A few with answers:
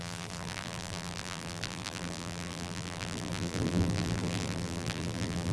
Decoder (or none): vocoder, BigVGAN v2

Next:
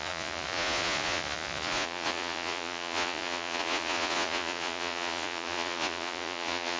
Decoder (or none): vocoder, Vocos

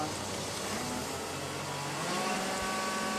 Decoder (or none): none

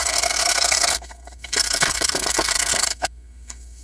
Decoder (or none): codec, SNAC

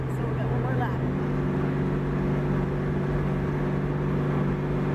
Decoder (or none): none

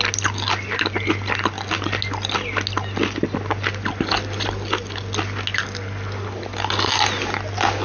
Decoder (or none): none